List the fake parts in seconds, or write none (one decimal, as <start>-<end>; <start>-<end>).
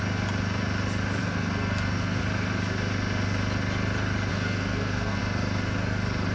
1.2-2.2; 4.3-5.2